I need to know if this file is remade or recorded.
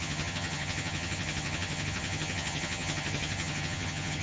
remade